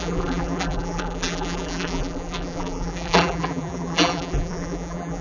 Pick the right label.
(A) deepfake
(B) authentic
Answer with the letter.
A